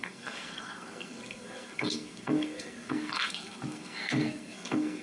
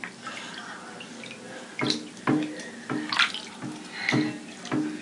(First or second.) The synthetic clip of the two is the first